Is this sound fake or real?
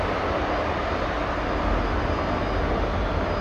real